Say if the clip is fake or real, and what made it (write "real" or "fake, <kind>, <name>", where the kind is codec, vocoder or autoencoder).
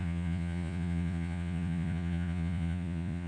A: fake, vocoder, Vocos